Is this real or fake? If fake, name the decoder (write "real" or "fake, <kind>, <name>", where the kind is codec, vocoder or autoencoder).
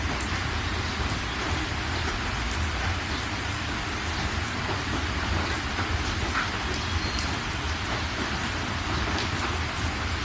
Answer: real